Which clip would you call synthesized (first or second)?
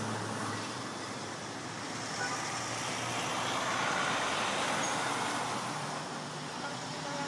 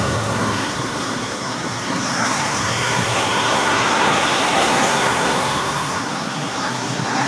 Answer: second